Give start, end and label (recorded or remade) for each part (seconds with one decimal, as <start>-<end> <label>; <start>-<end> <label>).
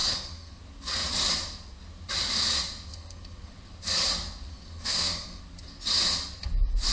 0.0-0.6 remade; 0.6-2.9 recorded; 2.9-3.5 remade; 3.5-4.5 recorded; 4.5-5.4 remade; 5.4-6.9 recorded